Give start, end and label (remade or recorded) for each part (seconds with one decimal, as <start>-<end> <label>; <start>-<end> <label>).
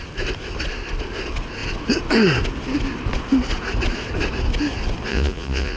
0.0-5.1 recorded; 5.1-5.8 remade